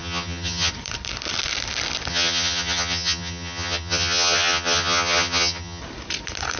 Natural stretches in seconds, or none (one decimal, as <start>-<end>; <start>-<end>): 0.7-2.1; 5.8-6.6